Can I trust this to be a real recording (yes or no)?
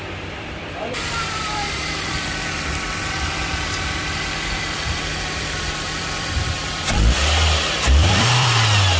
no